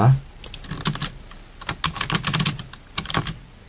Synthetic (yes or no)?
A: no